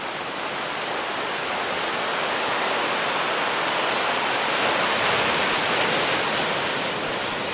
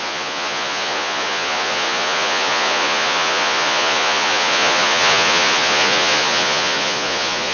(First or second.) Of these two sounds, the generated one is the second